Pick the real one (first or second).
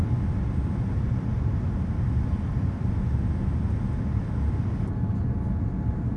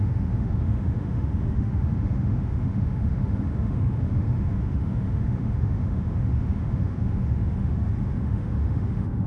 first